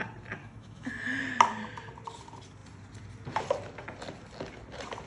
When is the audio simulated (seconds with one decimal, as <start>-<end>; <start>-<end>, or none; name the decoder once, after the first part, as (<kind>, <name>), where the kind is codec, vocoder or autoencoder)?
0.4-1.2 (autoencoder, DAC-VAE)